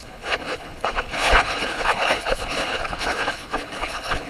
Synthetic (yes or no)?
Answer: yes